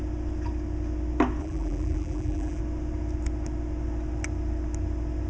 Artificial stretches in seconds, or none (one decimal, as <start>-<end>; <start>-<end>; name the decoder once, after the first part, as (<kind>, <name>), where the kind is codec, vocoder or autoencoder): 1.4-2.6 (vocoder, BigVGAN v2)